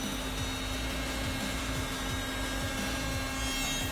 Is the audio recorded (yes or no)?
yes